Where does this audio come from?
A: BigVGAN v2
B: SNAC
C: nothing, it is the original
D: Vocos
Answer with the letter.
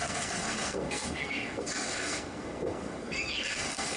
B